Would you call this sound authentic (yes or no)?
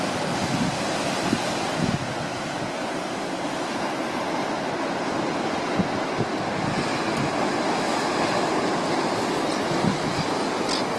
yes